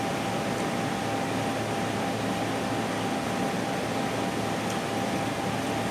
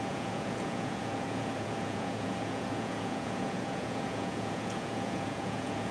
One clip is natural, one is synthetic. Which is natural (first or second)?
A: first